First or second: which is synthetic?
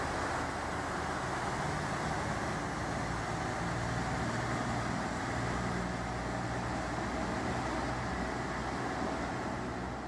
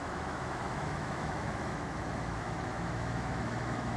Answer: second